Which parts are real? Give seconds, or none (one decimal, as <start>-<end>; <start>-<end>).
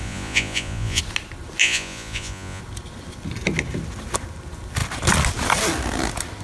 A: 1.0-1.6; 2.6-6.4